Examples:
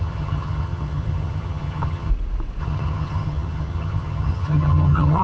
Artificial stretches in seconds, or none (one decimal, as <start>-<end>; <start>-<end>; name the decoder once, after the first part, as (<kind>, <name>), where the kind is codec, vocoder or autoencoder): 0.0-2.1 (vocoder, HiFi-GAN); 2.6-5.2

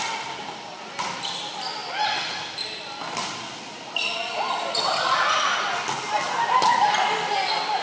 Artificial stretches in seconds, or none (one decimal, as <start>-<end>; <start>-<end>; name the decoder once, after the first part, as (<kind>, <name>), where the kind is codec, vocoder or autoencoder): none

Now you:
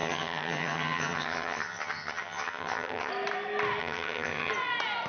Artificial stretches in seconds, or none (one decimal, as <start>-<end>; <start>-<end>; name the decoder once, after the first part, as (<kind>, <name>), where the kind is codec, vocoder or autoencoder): 0.0-3.1 (vocoder, HiFi-GAN); 3.8-4.5

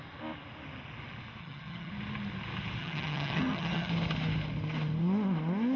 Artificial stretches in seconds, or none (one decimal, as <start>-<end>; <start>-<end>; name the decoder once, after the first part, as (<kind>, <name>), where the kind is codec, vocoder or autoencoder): 1.4-1.9 (vocoder, HiFi-GAN); 2.8-3.9